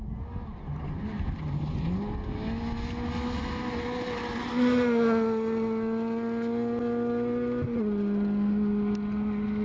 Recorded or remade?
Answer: recorded